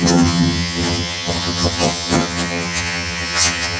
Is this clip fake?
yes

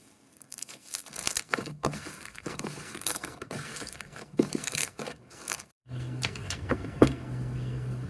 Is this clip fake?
yes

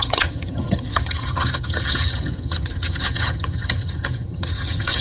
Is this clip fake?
yes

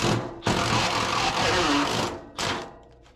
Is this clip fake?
no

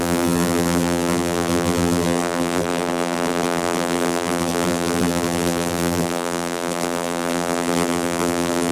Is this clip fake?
yes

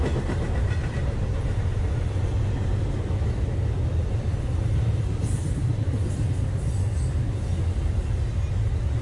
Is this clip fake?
no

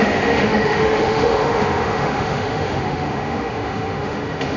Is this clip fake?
yes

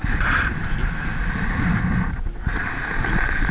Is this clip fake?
no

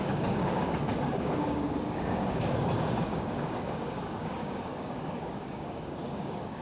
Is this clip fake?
yes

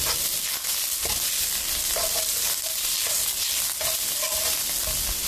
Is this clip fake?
no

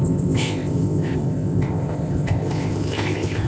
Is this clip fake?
yes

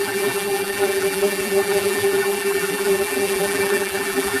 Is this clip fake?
yes